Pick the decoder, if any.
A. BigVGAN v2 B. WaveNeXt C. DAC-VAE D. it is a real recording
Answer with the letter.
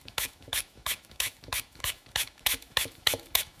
C